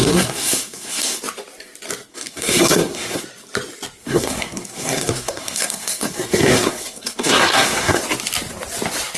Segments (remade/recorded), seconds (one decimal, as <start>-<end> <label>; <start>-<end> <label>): 0.0-1.2 remade; 1.2-2.1 recorded; 2.1-3.2 remade; 3.2-4.0 recorded; 4.0-8.0 remade; 8.0-9.2 recorded